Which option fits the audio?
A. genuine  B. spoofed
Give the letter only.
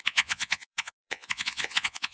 B